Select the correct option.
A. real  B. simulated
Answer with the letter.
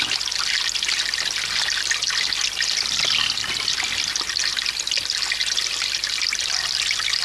A